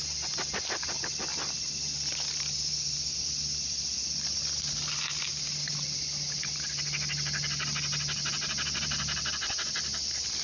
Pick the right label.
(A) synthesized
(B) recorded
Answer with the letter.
B